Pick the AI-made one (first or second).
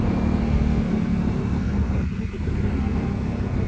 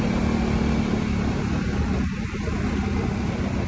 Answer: first